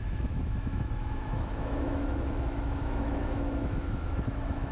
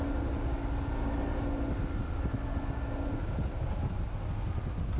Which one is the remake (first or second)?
first